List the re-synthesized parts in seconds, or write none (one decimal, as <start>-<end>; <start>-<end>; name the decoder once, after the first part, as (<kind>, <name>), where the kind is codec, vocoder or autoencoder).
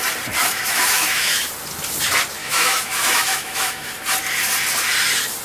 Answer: 0.4-1.5 (autoencoder, DAC-VAE); 2.4-3.9